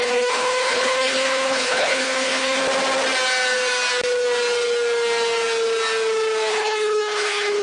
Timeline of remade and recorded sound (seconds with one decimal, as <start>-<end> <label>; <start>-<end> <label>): 0.0-2.6 remade; 2.6-6.5 recorded; 6.5-7.6 remade